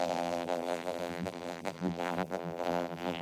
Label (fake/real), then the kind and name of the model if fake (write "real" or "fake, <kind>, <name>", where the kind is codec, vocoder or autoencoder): fake, vocoder, BigVGAN v2